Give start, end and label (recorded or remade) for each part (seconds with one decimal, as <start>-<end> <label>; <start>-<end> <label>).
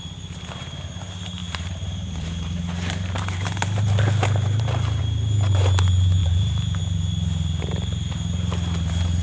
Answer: 0.0-1.4 recorded; 1.4-5.0 remade; 5.0-6.2 recorded; 6.2-6.8 remade; 6.8-9.2 recorded